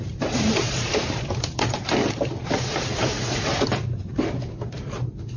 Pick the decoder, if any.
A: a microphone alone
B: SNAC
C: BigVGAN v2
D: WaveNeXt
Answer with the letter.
C